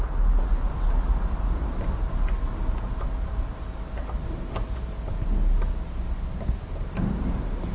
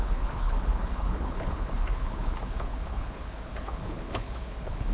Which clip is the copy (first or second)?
second